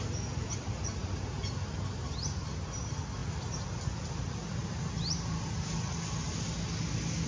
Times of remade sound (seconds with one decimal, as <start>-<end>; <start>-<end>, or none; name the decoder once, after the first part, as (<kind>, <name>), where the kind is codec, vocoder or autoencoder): none